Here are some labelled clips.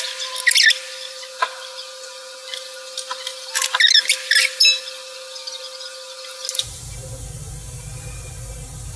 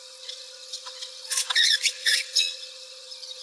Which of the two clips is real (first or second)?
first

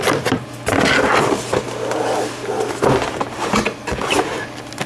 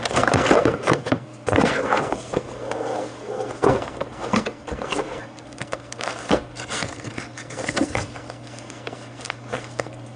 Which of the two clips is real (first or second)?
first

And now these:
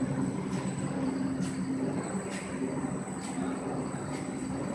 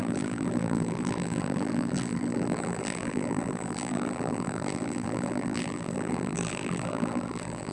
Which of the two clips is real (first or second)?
first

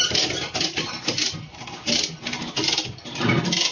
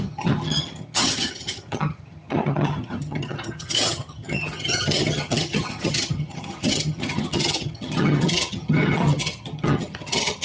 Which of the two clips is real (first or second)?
first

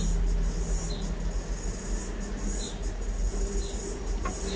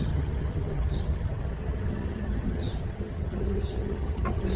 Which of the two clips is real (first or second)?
first